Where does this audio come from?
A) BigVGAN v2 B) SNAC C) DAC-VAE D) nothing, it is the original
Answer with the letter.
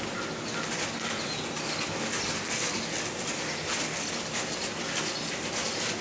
D